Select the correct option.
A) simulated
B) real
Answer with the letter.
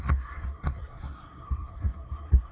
A